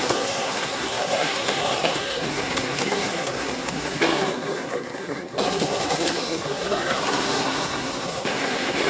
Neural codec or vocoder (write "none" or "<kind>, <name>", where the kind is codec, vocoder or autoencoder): codec, SNAC